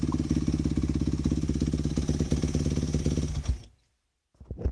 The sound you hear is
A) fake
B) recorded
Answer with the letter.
B